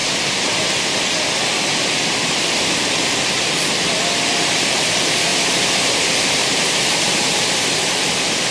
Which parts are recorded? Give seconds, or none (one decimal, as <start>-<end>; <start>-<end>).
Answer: 0.0-5.3; 5.9-6.4; 8.1-8.5